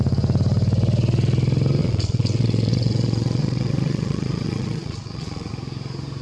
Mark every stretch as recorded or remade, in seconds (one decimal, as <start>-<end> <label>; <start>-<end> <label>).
0.0-1.8 recorded; 1.8-5.5 remade; 5.5-6.2 recorded